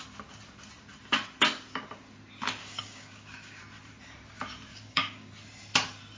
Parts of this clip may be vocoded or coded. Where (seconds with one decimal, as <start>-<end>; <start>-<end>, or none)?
2.6-3.6; 4.7-5.3